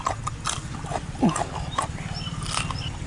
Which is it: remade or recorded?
recorded